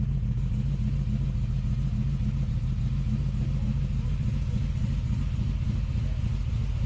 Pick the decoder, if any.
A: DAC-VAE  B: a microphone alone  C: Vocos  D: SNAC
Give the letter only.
B